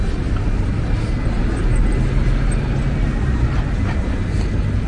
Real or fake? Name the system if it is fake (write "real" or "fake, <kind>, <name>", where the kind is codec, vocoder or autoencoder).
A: real